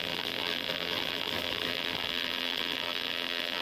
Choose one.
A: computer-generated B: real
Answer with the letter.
A